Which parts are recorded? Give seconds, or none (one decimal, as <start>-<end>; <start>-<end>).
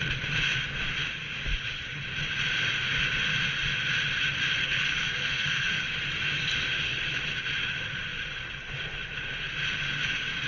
0.0-4.6; 5.8-10.5